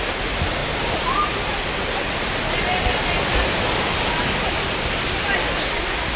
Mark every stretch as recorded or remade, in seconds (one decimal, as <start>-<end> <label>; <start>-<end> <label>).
0.0-6.2 recorded

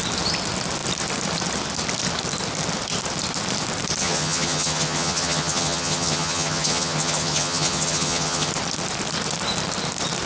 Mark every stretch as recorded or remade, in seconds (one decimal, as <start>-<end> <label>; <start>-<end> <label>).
0.0-4.0 recorded; 4.0-8.5 remade; 8.5-10.3 recorded

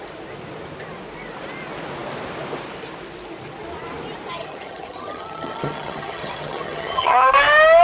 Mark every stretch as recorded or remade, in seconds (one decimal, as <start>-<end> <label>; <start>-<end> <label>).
0.0-4.4 recorded; 4.4-7.3 remade; 7.3-7.8 recorded

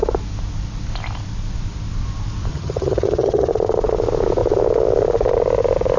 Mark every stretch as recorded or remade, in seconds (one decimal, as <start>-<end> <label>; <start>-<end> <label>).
0.0-2.5 recorded; 2.5-3.5 remade; 3.5-6.0 recorded